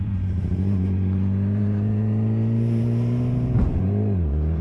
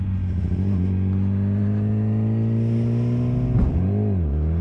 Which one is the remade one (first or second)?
first